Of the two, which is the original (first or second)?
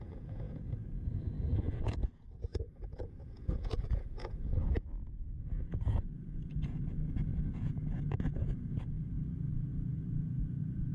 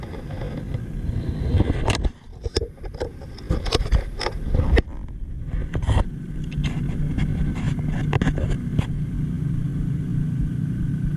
second